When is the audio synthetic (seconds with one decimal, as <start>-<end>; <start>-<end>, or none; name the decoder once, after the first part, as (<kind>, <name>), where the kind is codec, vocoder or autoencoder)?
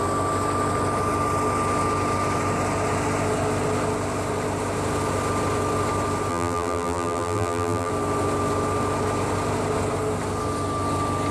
6.3-7.9 (vocoder, BigVGAN v2)